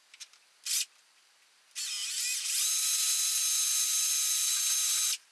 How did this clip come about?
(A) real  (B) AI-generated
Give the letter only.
A